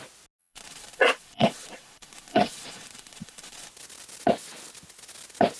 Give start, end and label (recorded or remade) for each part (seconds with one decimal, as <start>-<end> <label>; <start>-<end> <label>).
0.0-0.4 recorded; 0.4-3.7 remade; 3.7-5.6 recorded